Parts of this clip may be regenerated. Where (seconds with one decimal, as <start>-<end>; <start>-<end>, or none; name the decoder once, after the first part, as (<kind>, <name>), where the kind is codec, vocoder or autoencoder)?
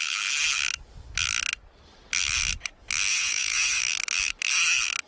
3.1-3.8 (vocoder, Vocos)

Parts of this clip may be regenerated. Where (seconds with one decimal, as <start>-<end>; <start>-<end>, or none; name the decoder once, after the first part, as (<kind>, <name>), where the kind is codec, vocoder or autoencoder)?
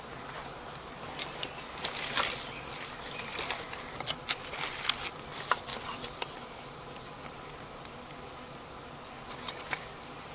none